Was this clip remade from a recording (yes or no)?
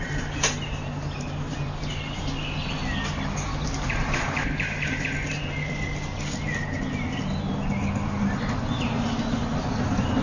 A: no